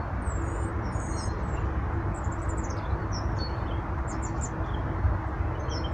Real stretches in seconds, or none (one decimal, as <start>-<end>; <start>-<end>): 0.0-0.7; 4.1-5.9